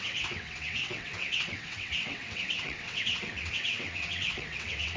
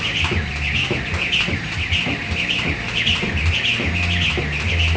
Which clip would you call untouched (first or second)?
second